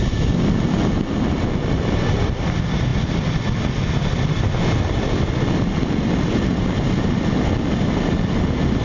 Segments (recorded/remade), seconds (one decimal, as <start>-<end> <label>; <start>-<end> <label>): 0.0-8.8 recorded